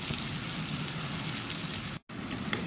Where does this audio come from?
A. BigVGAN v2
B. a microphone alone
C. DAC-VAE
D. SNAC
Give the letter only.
B